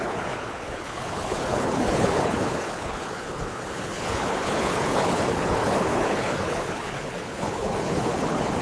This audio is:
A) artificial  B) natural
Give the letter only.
A